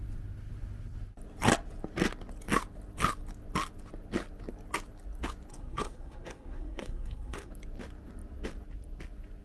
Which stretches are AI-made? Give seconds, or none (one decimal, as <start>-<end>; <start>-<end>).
5.5-7.5